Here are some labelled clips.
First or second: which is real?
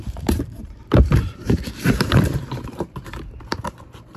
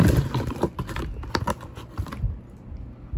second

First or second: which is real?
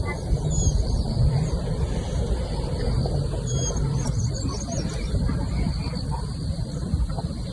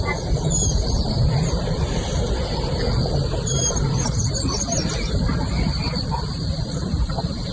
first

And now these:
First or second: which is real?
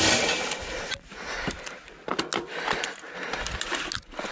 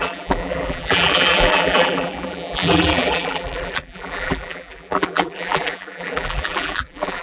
first